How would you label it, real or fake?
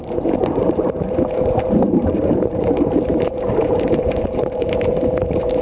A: fake